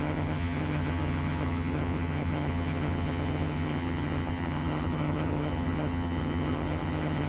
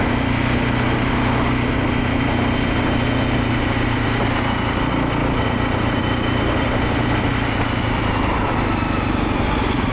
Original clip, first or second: second